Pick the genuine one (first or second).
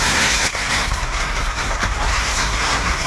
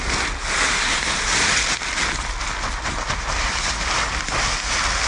second